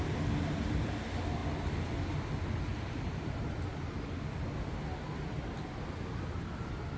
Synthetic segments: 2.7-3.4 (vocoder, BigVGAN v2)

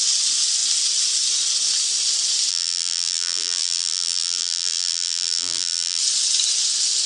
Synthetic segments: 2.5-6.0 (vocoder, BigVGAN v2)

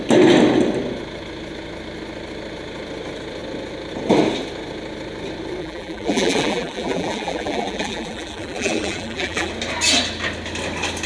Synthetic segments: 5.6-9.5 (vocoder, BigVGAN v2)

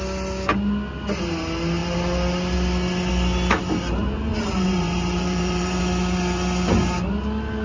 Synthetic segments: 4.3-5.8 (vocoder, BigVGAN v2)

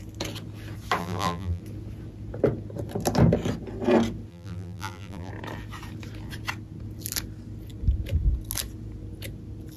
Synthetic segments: 1.0-1.6 (vocoder, BigVGAN v2); 4.3-5.3